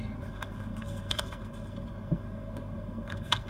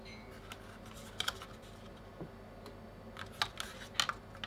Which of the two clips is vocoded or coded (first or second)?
first